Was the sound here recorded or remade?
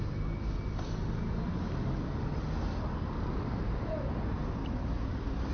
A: recorded